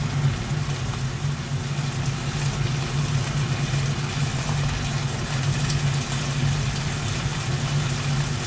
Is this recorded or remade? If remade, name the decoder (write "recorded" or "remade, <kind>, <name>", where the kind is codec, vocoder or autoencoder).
recorded